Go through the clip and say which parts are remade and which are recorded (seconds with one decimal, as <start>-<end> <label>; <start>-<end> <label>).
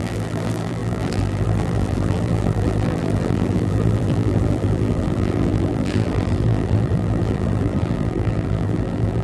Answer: 0.0-9.2 remade